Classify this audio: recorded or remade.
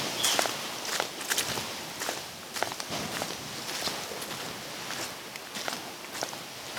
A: recorded